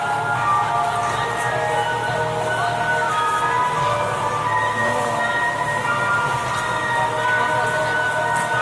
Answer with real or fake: real